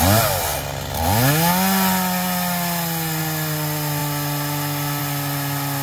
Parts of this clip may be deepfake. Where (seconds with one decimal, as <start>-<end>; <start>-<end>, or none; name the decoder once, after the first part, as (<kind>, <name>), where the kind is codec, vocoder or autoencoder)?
none